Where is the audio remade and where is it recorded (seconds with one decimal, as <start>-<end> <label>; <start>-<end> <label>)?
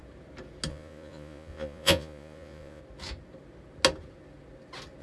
0.0-0.7 recorded; 0.7-2.8 remade; 2.8-5.0 recorded